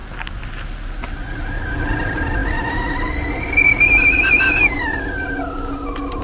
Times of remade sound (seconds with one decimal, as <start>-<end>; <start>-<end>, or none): none